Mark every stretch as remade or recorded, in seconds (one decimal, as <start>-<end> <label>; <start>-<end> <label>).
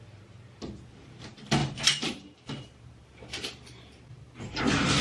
0.0-1.6 recorded; 1.6-4.6 remade; 4.6-5.0 recorded